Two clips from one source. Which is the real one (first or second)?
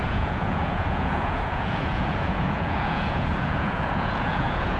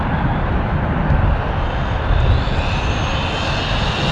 second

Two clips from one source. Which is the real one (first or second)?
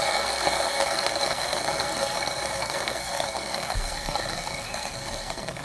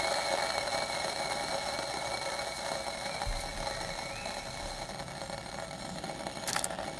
second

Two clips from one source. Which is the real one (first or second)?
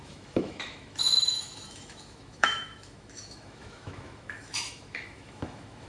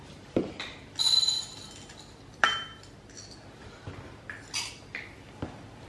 second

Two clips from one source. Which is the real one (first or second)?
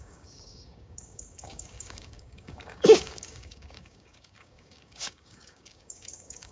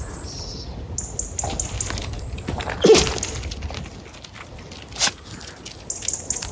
second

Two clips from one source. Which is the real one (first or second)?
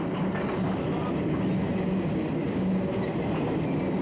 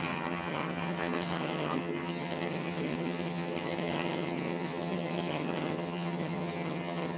first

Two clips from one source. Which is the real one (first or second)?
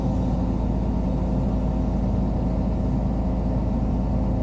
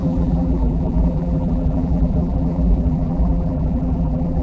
first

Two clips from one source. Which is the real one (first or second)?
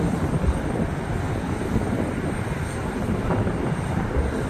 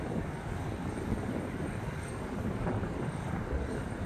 first